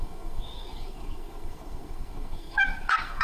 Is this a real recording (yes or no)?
no